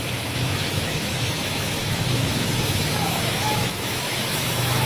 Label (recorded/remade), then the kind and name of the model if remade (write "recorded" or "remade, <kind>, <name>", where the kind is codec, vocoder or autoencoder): remade, autoencoder, DAC-VAE